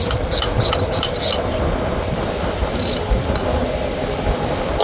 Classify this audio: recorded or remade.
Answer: recorded